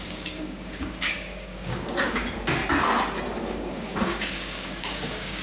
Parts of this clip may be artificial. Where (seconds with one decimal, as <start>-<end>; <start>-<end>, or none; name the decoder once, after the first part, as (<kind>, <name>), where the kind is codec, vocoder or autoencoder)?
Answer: 0.0-2.6 (codec, DAC); 3.4-5.4